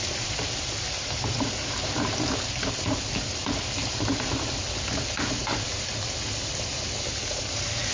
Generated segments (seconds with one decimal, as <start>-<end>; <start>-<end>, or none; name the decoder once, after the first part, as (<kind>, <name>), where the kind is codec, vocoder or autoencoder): none